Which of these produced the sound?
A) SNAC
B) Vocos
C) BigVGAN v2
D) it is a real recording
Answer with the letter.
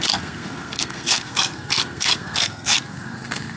A